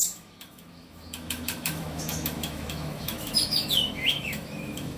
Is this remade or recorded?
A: remade